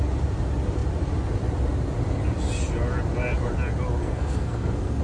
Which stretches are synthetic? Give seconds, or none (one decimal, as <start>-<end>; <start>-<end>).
4.0-5.0

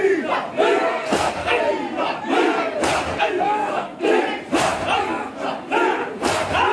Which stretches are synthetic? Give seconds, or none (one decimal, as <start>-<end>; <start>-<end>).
0.9-1.6; 3.1-4.2

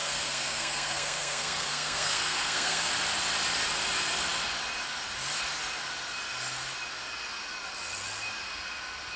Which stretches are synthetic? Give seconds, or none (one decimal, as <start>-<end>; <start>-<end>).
0.0-2.9

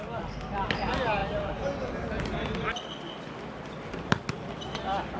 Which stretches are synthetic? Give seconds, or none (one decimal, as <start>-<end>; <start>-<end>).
none